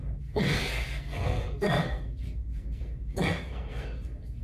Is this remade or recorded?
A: remade